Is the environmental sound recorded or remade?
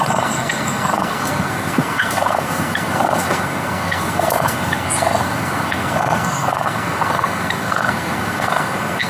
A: remade